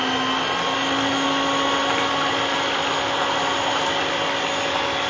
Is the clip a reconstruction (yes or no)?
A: no